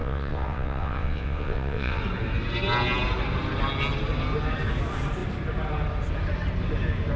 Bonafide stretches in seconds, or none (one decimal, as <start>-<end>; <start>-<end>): 2.0-7.2